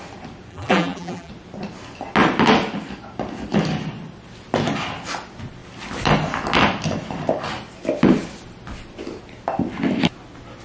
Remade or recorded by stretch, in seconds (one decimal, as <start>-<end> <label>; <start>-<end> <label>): 0.0-0.5 recorded; 0.5-1.3 remade; 1.3-10.6 recorded